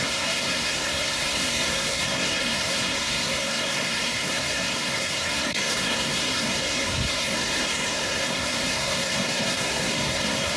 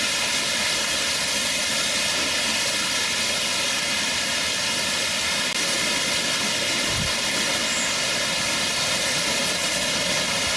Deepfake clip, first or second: first